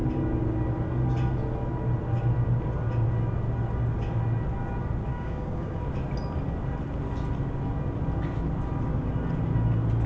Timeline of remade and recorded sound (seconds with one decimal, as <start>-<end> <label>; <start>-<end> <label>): 0.0-5.1 recorded; 5.1-5.8 remade; 5.8-10.1 recorded